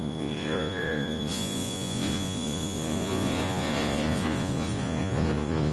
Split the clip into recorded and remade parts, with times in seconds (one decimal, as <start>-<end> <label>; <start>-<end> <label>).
0.0-5.7 remade